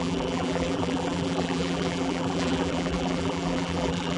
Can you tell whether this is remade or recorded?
remade